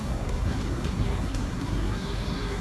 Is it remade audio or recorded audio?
remade